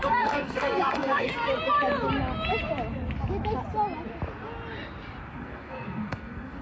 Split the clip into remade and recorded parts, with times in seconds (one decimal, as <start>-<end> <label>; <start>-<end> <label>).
0.0-1.3 remade; 1.3-5.3 recorded; 5.3-6.6 remade